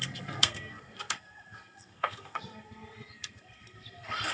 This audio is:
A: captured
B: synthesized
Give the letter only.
B